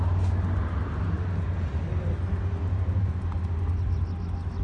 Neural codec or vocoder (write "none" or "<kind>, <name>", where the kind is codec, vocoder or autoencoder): none